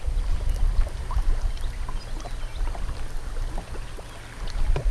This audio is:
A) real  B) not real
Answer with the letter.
A